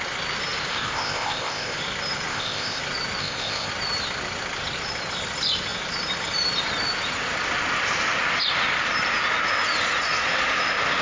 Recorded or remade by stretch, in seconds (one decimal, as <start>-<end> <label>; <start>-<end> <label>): 0.0-0.7 recorded; 0.7-1.8 remade; 1.8-2.3 recorded; 2.3-2.8 remade; 2.8-3.2 recorded; 3.2-3.7 remade; 3.7-11.0 recorded